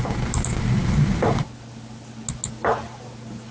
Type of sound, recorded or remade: recorded